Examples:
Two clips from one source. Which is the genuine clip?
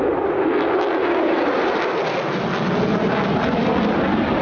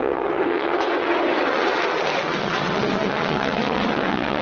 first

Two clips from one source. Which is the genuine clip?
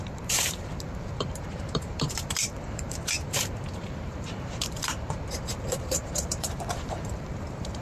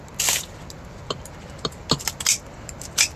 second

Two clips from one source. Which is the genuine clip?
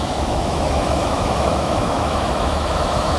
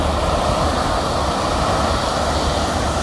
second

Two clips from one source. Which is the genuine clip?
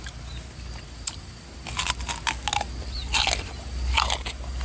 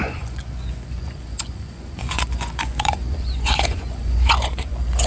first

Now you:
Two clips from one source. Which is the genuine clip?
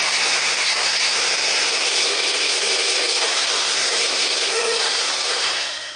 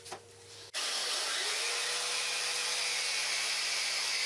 second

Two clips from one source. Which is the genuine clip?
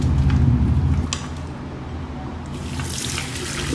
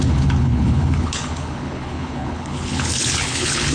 first